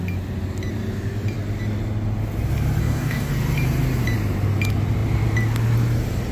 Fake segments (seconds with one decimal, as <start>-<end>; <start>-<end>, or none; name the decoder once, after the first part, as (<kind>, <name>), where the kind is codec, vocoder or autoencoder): 2.8-3.3 (codec, DAC)